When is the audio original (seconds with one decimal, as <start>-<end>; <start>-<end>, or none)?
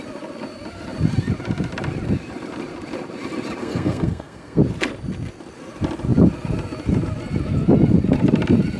0.0-3.6; 4.6-8.8